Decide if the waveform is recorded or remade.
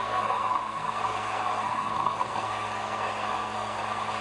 remade